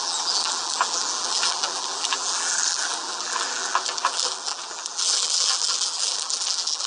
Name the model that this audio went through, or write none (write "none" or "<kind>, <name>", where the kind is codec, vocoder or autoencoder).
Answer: vocoder, BigVGAN v2